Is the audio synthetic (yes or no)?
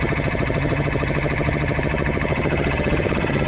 yes